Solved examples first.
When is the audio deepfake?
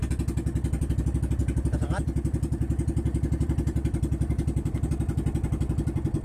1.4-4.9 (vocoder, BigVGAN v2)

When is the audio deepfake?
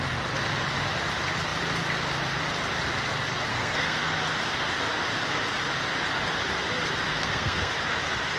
3.5-4.0 (codec, SNAC); 7.1-7.7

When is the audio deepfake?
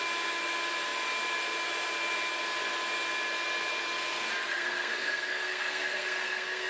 4.5-6.7 (codec, SNAC)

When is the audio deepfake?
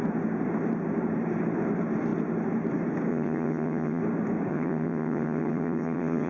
3.1-4.0 (vocoder, HiFi-GAN); 4.5-6.3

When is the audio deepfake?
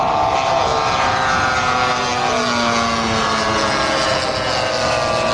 none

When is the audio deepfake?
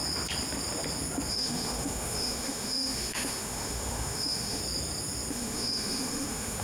1.3-4.6 (autoencoder, DAC-VAE); 5.3-6.6